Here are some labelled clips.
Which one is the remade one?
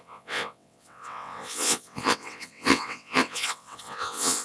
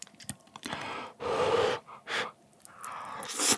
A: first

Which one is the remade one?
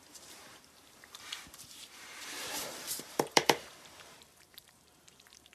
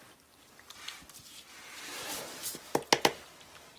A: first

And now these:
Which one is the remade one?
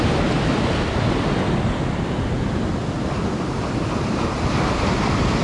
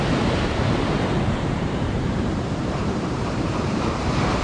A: second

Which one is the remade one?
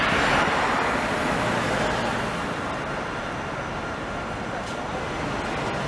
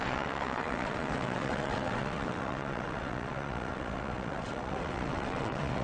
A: second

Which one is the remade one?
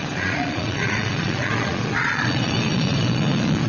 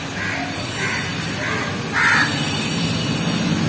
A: first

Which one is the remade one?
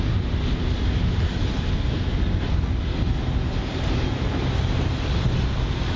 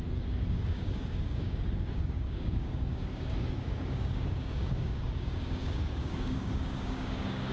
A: second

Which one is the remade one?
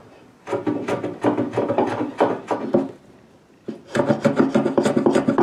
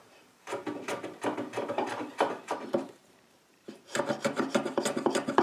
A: second